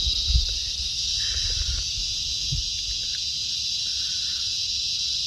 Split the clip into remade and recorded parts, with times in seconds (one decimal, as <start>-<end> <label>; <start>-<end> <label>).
0.0-5.3 recorded